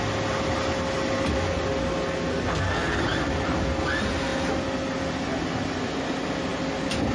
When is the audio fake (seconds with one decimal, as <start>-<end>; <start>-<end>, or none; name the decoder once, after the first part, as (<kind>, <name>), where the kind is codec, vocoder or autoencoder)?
2.3-3.0 (codec, SNAC)